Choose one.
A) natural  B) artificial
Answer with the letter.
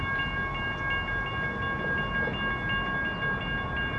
A